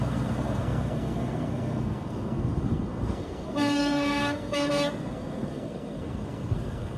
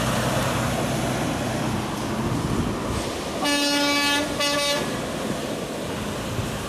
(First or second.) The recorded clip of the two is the second